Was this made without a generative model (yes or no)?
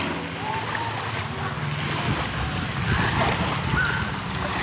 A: yes